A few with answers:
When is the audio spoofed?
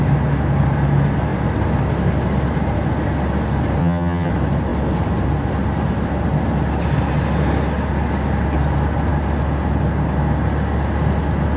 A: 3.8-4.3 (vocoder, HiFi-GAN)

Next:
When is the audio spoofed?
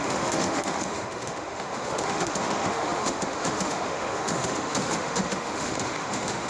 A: 0.0-6.5 (autoencoder, DAC-VAE)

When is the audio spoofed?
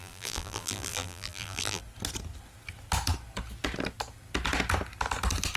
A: 0.0-1.8 (vocoder, BigVGAN v2)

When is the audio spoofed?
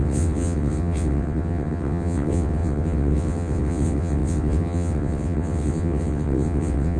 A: 0.0-7.0 (vocoder, WaveNeXt)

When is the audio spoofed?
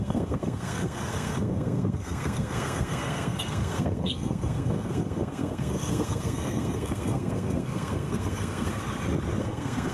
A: 0.0-8.8 (codec, SNAC); 9.4-9.9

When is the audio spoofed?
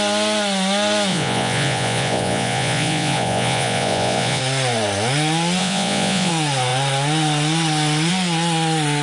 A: 1.1-4.4 (vocoder, Vocos); 5.6-6.3